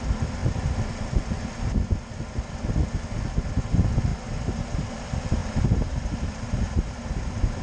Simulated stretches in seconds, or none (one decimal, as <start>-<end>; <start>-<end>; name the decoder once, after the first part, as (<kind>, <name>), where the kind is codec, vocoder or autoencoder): 4.1-4.9 (vocoder, BigVGAN v2); 5.4-7.6